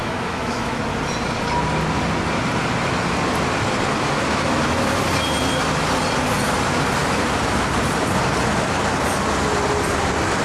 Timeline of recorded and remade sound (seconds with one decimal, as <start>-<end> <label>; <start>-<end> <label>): 0.0-0.8 remade; 0.8-4.3 recorded; 4.3-5.0 remade; 5.0-10.4 recorded